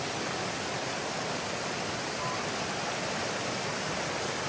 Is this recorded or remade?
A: recorded